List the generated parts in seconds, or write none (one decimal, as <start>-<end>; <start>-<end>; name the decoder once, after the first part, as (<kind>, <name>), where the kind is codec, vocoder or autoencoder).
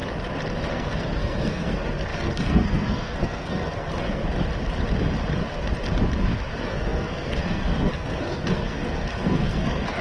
0.7-4.2 (codec, SNAC); 6.5-10.0